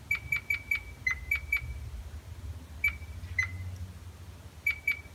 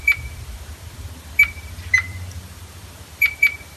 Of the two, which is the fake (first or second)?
second